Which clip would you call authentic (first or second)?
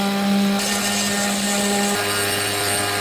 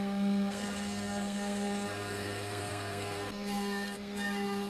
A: first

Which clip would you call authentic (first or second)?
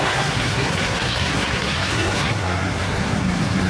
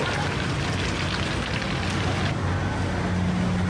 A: second